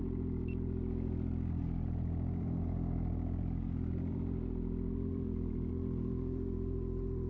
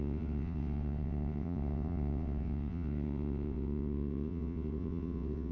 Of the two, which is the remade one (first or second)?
second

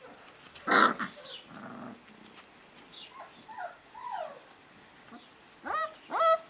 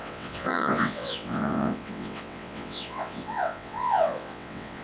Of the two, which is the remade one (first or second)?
second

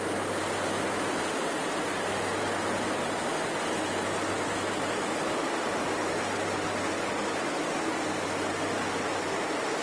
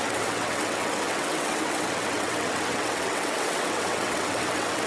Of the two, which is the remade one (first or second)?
second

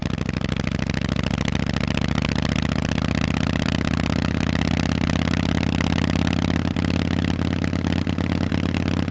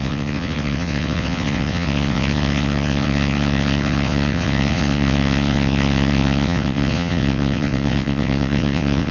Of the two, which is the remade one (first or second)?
second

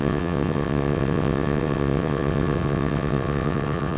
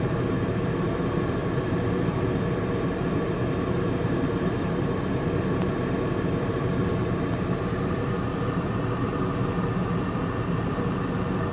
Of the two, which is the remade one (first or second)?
first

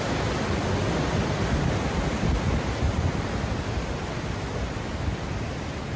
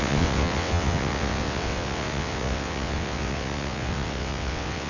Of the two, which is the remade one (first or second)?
second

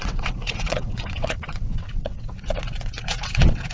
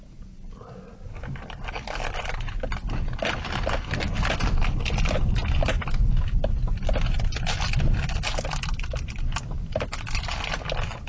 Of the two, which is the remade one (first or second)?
first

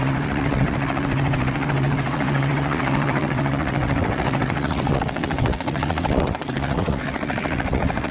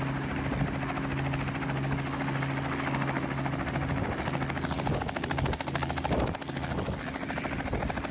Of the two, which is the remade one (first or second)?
first